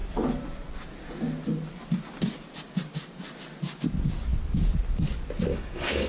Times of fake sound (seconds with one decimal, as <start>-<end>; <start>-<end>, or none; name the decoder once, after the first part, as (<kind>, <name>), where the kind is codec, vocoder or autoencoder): 5.5-6.1 (codec, DAC)